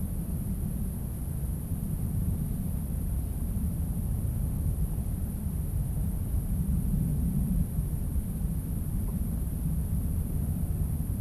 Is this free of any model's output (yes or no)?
no